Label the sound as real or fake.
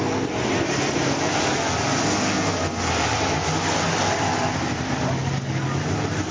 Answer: real